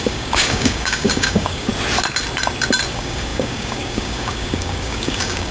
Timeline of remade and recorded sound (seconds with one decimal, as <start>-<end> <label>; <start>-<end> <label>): 0.0-1.7 remade; 1.7-2.9 recorded; 2.9-5.5 remade